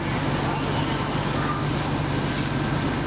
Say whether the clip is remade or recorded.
recorded